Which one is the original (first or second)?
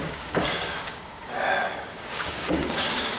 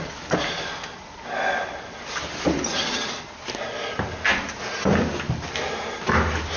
second